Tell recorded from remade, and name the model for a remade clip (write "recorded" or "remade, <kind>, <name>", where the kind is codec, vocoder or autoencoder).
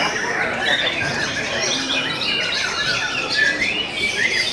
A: recorded